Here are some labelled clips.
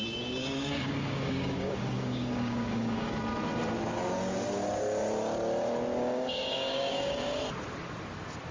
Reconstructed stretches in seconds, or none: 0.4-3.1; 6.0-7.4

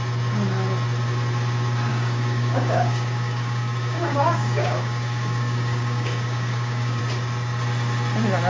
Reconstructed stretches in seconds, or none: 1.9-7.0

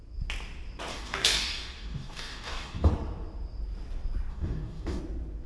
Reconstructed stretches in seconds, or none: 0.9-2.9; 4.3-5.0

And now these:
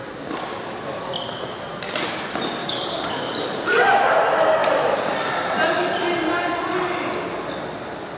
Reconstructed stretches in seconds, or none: 2.6-3.6

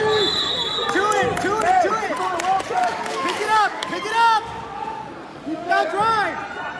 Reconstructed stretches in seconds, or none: 2.8-4.0; 5.3-5.9